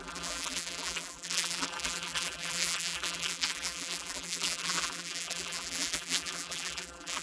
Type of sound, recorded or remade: remade